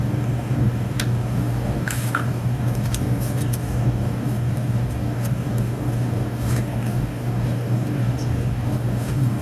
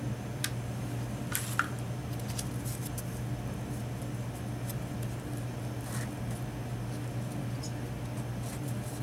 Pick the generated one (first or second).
first